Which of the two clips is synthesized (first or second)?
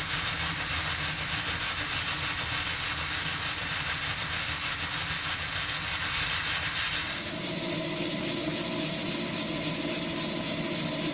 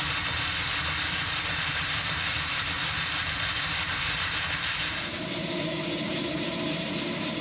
second